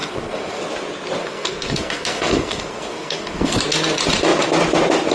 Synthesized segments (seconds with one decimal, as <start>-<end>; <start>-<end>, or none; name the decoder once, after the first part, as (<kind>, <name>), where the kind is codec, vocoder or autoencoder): 0.0-0.6 (codec, SNAC); 1.2-3.6